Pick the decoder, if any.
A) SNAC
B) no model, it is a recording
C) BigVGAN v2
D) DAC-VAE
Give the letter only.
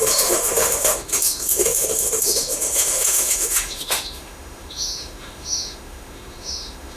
D